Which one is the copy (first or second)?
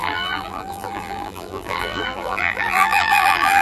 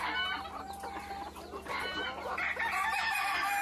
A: first